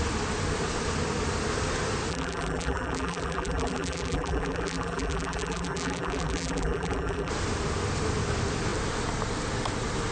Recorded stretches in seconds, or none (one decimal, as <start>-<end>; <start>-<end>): 0.0-2.1; 7.3-10.1

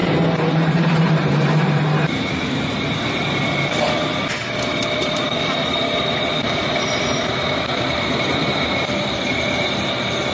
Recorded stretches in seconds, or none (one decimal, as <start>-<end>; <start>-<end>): 2.6-5.0; 9.3-10.3

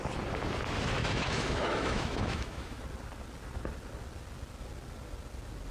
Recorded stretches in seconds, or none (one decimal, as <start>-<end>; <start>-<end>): 0.0-1.0; 2.8-5.7

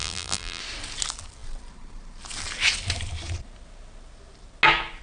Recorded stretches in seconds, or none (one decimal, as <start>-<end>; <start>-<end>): 0.6-5.0

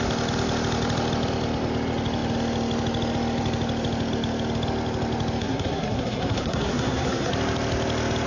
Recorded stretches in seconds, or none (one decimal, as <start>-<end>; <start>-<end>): 0.0-5.4; 7.3-8.3